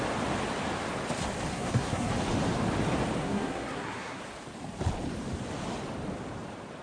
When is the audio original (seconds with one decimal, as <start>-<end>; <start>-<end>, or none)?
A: 0.0-1.5; 2.1-3.2; 4.2-6.8